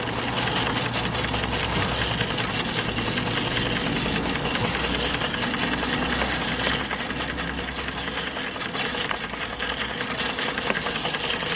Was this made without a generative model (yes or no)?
yes